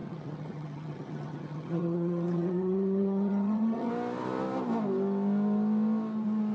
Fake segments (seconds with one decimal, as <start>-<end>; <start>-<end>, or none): 0.0-3.9